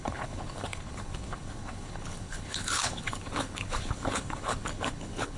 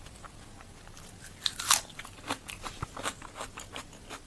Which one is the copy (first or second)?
first